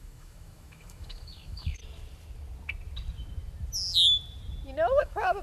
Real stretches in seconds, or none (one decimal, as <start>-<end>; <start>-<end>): 1.8-5.0

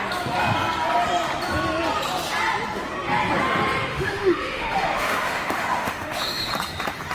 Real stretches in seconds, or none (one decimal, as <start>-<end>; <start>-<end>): 0.0-3.9; 6.5-7.1

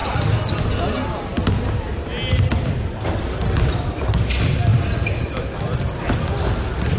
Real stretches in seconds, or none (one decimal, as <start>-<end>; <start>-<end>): 0.0-7.0

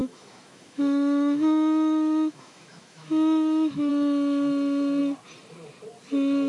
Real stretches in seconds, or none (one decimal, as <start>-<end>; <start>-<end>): 3.9-6.5

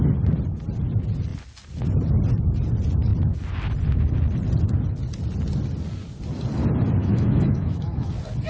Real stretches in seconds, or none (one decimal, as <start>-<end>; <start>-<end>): 0.0-7.0; 8.1-8.5

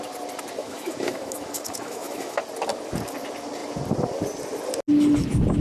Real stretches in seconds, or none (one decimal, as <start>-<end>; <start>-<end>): 0.0-0.6; 2.4-5.6